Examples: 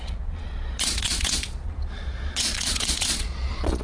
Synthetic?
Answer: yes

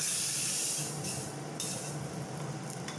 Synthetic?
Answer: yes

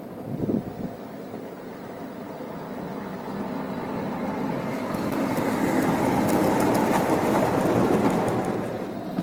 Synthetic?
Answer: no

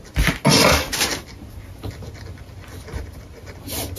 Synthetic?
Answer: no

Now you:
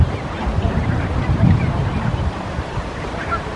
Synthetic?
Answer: yes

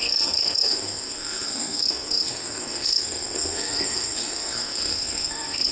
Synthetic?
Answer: yes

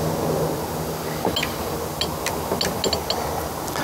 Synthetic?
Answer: no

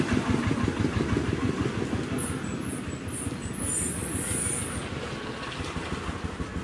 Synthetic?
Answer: no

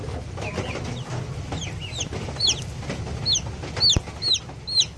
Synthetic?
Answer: no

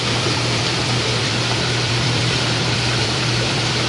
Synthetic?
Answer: yes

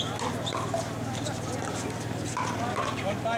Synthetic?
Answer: no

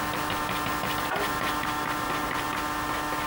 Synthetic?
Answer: no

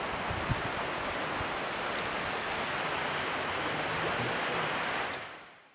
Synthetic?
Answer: no